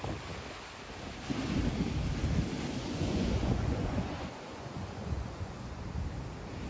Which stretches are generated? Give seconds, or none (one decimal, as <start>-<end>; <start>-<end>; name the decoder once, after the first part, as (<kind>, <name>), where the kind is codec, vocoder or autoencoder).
2.8-5.8 (vocoder, Vocos)